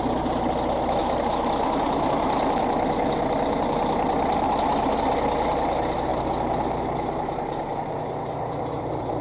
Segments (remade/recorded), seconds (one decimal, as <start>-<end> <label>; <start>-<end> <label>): 0.0-9.2 recorded